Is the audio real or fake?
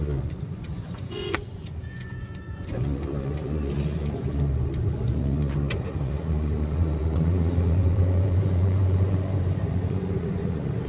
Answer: fake